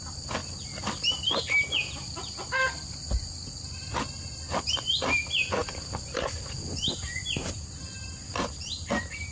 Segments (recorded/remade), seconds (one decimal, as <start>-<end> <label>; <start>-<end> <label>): 0.0-0.4 recorded; 0.4-3.9 remade; 3.9-5.6 recorded; 5.6-8.8 remade; 8.8-9.3 recorded